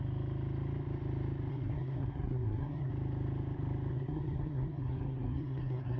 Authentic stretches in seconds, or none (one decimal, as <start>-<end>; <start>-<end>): 0.0-1.5; 2.9-3.9